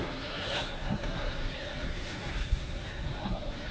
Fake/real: fake